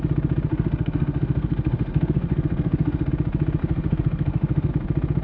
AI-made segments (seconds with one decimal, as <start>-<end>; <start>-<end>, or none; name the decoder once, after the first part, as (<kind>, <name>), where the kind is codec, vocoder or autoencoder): 0.5-3.1 (codec, SNAC); 3.6-4.7